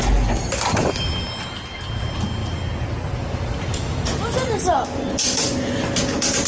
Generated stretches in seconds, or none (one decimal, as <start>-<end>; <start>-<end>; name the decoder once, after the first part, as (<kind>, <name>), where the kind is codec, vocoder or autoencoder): none